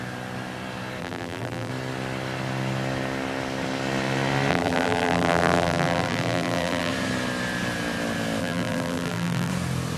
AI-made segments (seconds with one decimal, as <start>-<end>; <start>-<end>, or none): 1.0-1.7; 4.5-6.9; 8.4-9.5